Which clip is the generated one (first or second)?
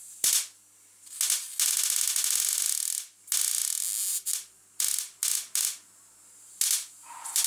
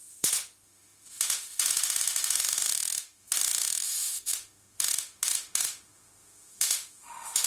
second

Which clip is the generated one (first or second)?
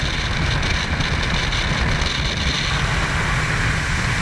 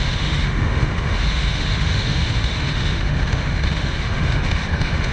second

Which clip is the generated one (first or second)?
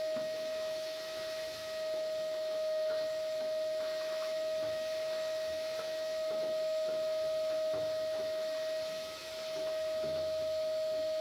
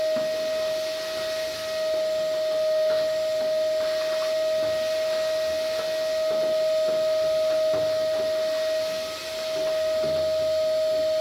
first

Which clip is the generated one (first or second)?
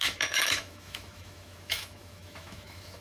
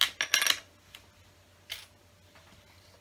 first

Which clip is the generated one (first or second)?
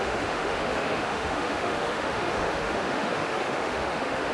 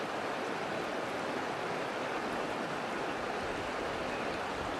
first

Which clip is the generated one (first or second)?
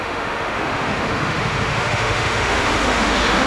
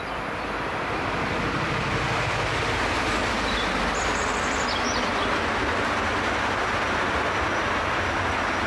first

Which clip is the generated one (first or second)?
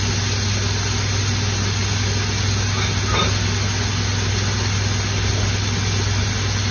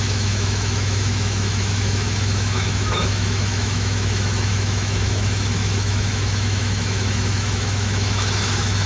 second